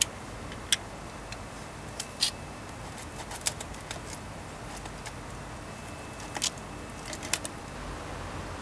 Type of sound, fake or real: real